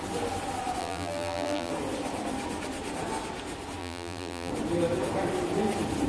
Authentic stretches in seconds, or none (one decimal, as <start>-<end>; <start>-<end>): 0.0-0.8; 1.7-3.8; 4.5-6.1